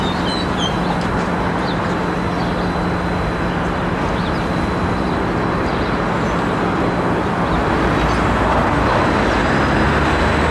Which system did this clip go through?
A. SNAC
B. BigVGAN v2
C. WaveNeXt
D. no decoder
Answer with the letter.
D